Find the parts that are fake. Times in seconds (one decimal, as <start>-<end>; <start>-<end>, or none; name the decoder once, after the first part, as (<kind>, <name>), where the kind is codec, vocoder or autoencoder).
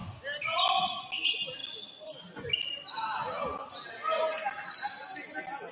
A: none